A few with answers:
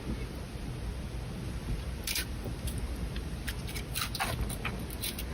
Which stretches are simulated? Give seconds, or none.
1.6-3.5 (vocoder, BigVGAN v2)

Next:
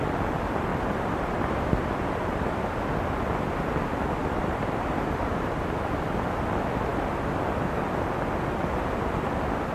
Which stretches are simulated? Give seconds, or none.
0.7-2.6 (vocoder, BigVGAN v2); 4.2-5.6

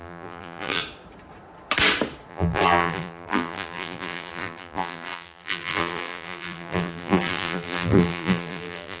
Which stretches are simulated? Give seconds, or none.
0.0-0.8 (vocoder, BigVGAN v2); 2.3-9.0

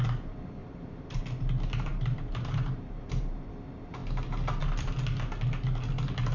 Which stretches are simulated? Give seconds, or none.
0.6-1.2 (vocoder, BigVGAN v2); 1.9-3.5

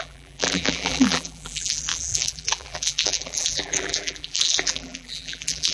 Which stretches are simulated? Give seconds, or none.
0.0-5.7 (vocoder, BigVGAN v2)

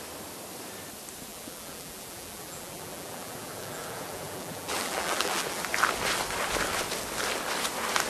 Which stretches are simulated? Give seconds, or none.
1.3-5.6 (vocoder, BigVGAN v2)

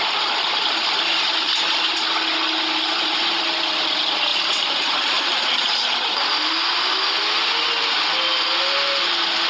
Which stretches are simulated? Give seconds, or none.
4.3-6.5 (vocoder, BigVGAN v2)

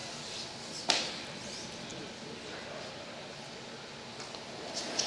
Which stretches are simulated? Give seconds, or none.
0.0-0.8 (vocoder, BigVGAN v2); 1.9-2.5